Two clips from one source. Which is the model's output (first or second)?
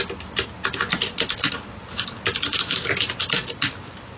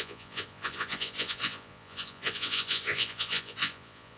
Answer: second